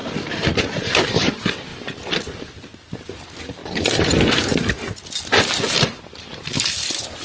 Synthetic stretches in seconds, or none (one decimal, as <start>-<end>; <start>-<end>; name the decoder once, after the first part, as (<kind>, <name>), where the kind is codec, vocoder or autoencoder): 0.0-3.6 (vocoder, BigVGAN v2); 5.0-7.2